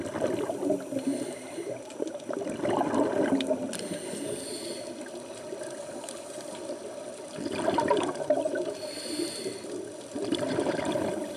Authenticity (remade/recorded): recorded